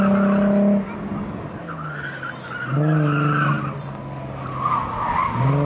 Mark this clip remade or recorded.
recorded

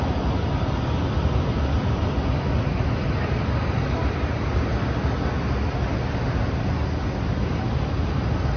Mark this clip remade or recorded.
recorded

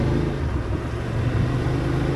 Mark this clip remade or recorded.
recorded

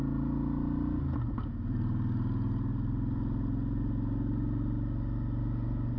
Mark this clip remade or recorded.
recorded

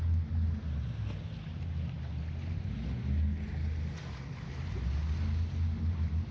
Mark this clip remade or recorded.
recorded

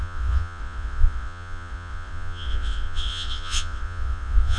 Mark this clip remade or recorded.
remade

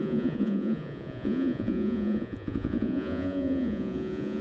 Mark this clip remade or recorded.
remade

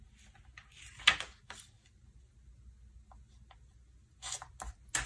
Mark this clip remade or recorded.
recorded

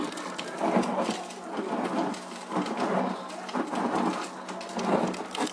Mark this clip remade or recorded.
recorded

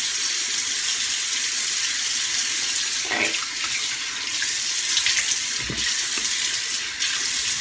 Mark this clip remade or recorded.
recorded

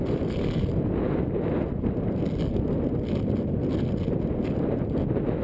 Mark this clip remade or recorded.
recorded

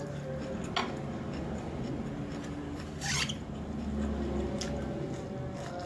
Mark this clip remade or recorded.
recorded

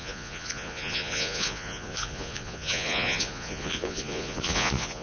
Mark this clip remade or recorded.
remade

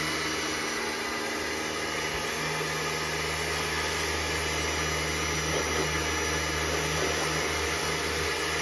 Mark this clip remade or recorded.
recorded